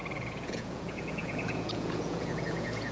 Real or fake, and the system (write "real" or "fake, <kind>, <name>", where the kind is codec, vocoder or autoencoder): fake, vocoder, Vocos